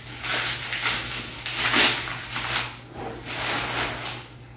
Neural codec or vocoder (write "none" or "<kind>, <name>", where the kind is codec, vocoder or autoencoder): none